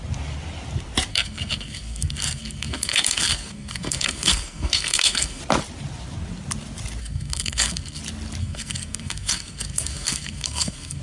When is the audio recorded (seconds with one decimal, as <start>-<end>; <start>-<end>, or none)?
0.0-1.1; 5.4-7.0; 8.0-8.4